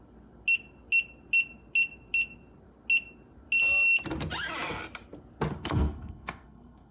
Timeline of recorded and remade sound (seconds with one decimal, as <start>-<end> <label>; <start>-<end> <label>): 0.0-5.6 recorded; 5.6-6.9 remade